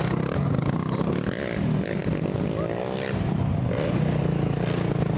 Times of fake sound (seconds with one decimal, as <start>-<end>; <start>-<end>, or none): none